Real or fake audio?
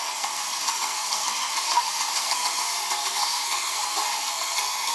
fake